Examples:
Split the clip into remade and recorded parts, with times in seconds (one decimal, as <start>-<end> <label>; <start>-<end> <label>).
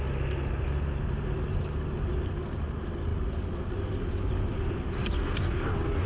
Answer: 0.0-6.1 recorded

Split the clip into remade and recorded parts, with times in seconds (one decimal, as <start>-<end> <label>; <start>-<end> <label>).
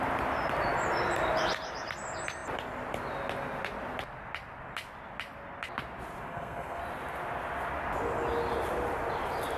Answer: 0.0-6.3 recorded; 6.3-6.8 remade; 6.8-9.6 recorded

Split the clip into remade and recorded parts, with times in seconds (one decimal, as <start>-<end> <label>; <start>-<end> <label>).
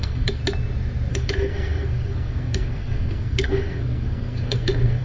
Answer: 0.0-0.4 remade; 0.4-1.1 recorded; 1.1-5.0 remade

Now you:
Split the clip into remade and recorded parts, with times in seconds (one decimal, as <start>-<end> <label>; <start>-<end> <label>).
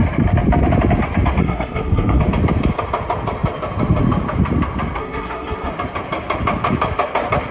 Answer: 0.0-1.4 recorded; 1.4-2.2 remade; 2.2-5.0 recorded; 5.0-5.7 remade; 5.7-7.5 recorded